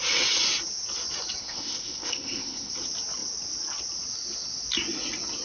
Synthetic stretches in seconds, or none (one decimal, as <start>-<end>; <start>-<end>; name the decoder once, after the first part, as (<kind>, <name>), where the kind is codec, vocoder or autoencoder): 1.4-2.7 (codec, ZipCodec)